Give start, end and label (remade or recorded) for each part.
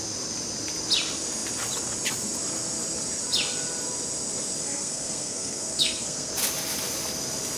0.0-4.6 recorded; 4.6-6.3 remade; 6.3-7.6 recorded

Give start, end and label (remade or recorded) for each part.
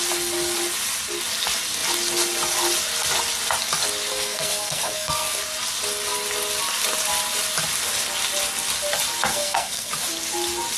0.0-4.1 recorded; 4.1-5.4 remade; 5.4-9.3 recorded; 9.3-9.9 remade; 9.9-10.8 recorded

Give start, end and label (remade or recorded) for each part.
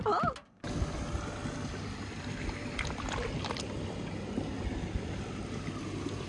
0.0-6.3 recorded